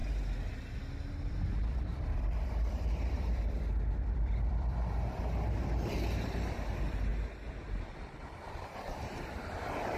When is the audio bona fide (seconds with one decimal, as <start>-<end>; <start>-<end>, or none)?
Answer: 0.0-1.3; 7.1-7.9